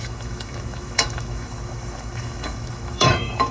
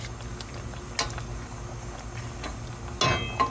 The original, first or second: second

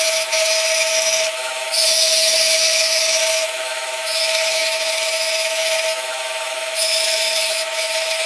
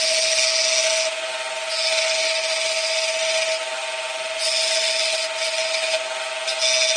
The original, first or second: second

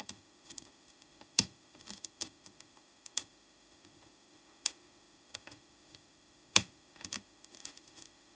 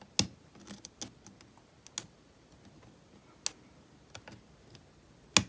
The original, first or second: second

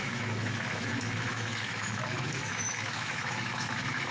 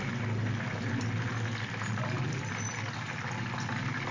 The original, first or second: second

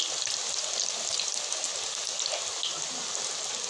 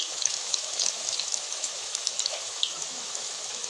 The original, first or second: first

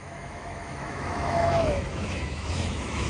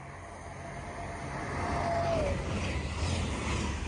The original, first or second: second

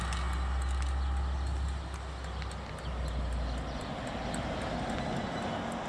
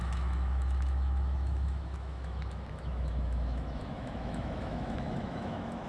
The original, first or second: first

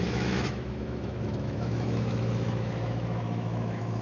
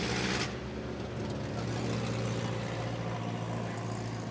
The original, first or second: second